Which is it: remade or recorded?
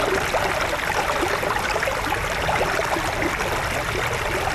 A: recorded